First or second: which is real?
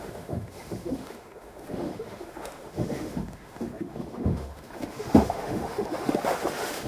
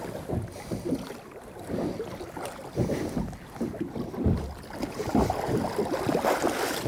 second